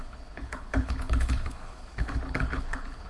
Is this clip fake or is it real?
fake